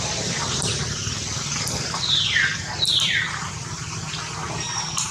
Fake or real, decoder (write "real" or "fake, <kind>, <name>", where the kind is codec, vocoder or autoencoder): real